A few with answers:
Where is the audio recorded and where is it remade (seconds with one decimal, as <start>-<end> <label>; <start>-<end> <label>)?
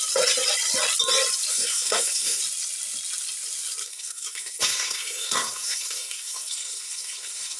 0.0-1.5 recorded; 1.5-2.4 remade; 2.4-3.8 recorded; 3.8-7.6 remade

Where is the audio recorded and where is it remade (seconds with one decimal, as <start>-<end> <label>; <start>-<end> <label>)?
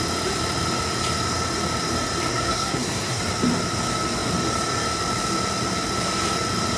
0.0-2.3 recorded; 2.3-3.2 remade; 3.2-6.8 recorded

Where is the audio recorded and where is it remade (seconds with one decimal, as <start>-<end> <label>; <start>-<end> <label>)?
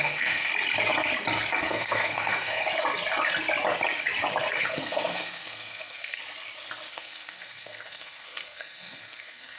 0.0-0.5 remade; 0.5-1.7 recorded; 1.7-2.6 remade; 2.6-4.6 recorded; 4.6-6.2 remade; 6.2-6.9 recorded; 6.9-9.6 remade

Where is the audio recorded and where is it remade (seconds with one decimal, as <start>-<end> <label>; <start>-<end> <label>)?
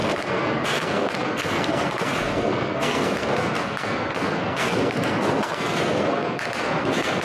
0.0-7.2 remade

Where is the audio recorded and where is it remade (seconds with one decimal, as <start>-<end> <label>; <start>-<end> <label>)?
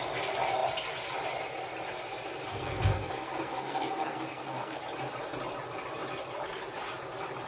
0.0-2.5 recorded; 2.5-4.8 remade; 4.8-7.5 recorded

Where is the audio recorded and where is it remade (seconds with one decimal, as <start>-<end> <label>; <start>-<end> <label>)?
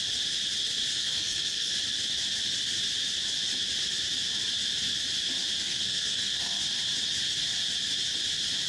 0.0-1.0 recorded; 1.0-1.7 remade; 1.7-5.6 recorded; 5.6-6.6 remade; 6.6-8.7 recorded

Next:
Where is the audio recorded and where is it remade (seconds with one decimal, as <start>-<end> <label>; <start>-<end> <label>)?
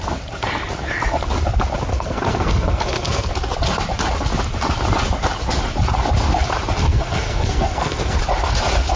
0.0-1.9 recorded; 1.9-3.3 remade; 3.3-6.8 recorded; 6.8-8.2 remade; 8.2-9.0 recorded